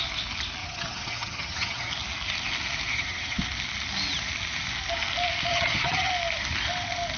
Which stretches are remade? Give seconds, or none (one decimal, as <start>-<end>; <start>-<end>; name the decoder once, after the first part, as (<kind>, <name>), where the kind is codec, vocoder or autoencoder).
0.6-1.9 (vocoder, HiFi-GAN); 2.9-3.4; 5.5-6.1